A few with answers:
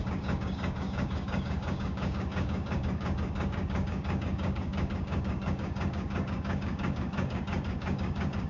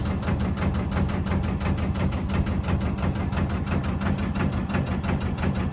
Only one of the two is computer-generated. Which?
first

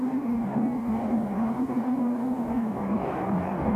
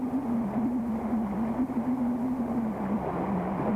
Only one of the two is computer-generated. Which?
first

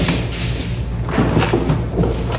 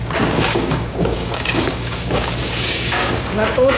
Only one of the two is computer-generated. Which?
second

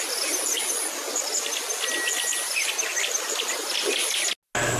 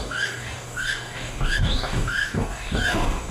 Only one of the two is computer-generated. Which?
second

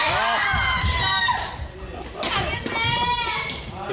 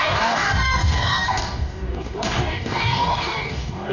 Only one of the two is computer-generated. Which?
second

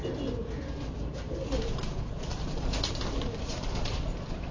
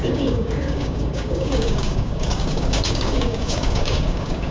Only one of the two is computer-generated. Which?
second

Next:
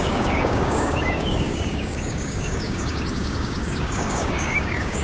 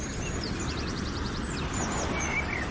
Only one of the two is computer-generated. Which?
first